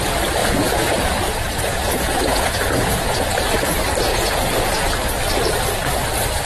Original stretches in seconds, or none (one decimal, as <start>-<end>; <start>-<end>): 0.0-0.4; 3.2-4.1; 5.1-6.5